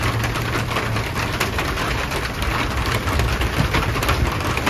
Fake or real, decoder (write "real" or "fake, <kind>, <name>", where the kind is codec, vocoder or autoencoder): real